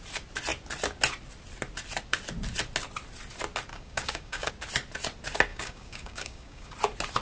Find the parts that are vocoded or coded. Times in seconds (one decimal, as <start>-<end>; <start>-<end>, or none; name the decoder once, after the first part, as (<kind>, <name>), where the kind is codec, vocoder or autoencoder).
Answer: 3.7-4.5 (codec, DAC); 5.5-6.7